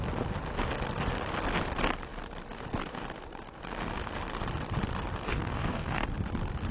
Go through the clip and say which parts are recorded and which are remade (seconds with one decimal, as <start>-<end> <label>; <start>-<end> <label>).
0.0-5.3 recorded; 5.3-6.0 remade; 6.0-6.7 recorded